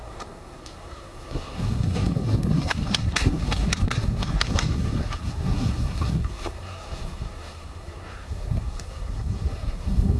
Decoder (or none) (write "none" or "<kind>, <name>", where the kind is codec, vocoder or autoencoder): codec, SNAC